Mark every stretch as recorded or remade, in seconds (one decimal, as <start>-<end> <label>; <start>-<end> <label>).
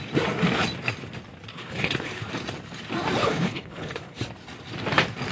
0.0-1.5 recorded; 1.5-2.3 remade; 2.3-3.2 recorded; 3.2-4.2 remade; 4.2-5.3 recorded